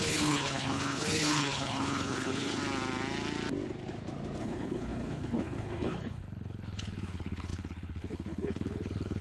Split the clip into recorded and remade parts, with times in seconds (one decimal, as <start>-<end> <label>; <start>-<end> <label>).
0.0-2.6 remade; 2.6-4.4 recorded; 4.4-9.2 remade